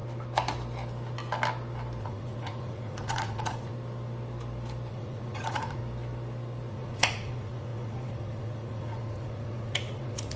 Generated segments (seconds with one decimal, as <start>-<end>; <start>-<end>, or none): 2.0-3.7; 4.9-5.8; 6.7-10.4